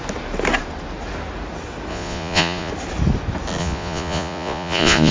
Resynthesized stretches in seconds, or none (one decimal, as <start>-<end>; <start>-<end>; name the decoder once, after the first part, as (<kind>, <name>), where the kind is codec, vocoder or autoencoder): 1.9-2.7 (vocoder, Vocos); 3.6-5.1